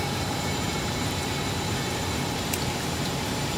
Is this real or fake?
fake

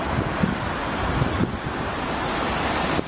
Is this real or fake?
real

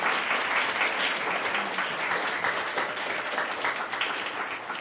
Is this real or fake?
real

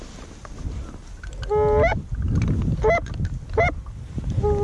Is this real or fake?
real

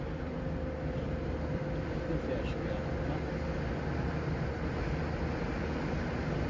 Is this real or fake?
real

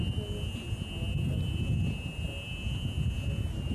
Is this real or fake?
real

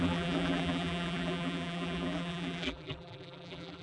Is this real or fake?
fake